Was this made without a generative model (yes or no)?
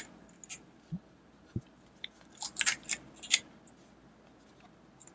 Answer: yes